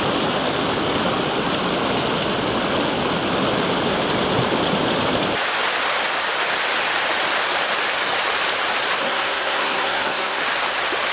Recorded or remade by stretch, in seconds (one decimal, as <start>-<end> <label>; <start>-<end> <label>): 0.0-9.0 recorded; 9.0-10.4 remade; 10.4-11.1 recorded